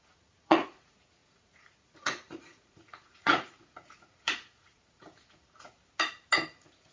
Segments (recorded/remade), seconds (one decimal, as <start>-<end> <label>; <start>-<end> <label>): 0.0-5.8 remade; 5.8-6.5 recorded; 6.5-6.9 remade